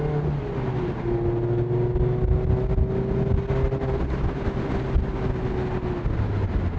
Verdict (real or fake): real